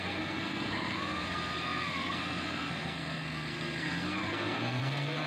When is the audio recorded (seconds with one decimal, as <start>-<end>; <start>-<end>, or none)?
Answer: none